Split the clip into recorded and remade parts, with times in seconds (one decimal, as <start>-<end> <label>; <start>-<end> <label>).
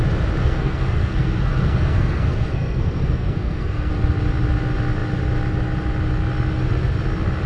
0.0-0.4 recorded; 0.4-3.9 remade; 3.9-7.5 recorded